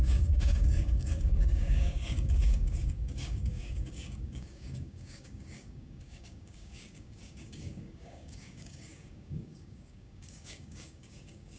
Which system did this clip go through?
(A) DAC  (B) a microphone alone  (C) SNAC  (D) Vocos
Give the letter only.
A